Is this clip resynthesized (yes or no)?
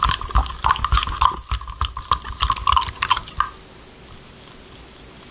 no